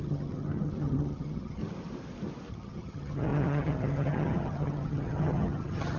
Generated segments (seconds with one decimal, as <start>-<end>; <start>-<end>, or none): 0.0-1.6; 2.5-6.0